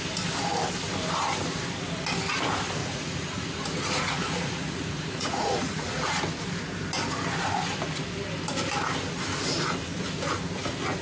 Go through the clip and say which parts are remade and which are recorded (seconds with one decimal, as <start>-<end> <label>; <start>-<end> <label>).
0.0-2.8 recorded; 2.8-6.1 remade; 6.1-11.0 recorded